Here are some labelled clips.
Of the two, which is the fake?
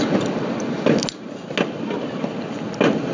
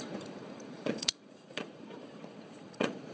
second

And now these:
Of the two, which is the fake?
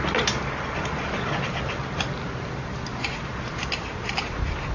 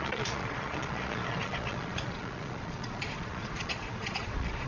second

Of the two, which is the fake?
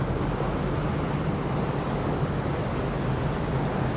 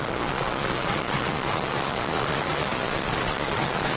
second